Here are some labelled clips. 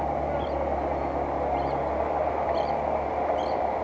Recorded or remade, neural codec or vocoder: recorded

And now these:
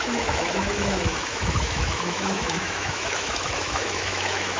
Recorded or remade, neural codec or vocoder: remade, autoencoder, DAC-VAE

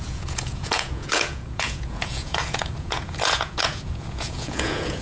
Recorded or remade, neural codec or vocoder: remade, vocoder, Vocos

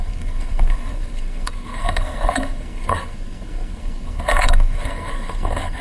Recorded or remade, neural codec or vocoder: remade, codec, SNAC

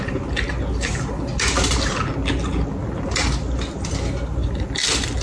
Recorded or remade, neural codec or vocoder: recorded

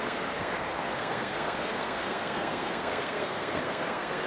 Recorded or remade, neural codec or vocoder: remade, codec, SNAC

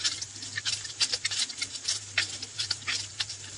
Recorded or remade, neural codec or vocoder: remade, vocoder, BigVGAN v2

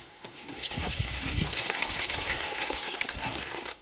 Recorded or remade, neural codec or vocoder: remade, codec, SNAC